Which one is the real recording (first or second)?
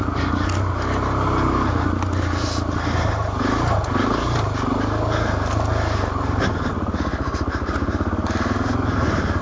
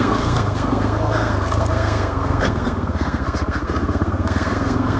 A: first